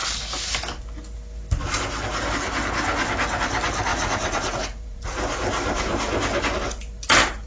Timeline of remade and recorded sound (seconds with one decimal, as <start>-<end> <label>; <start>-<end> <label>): 0.0-3.9 recorded; 3.9-5.0 remade; 5.0-7.5 recorded